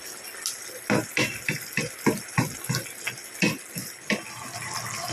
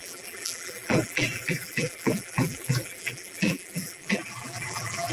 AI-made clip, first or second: second